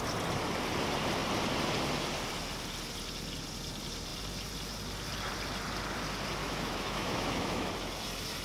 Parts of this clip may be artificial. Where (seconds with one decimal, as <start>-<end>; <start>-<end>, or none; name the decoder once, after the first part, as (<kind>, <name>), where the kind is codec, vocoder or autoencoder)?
6.4-7.7 (autoencoder, DAC-VAE)